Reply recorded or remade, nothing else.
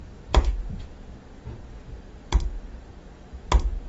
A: remade